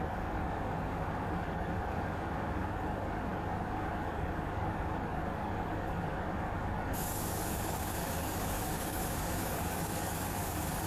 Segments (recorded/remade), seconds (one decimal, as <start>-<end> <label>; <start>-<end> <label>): 0.0-10.9 remade

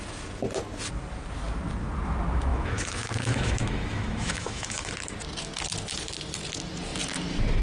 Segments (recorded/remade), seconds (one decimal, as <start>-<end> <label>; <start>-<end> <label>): 0.0-2.5 recorded; 2.5-4.9 remade; 4.9-7.6 recorded

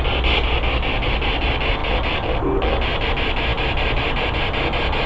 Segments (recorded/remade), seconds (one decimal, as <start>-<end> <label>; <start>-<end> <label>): 0.0-5.1 recorded